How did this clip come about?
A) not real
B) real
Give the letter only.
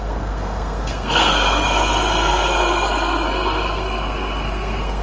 A